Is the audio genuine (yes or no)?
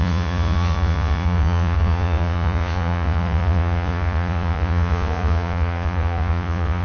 no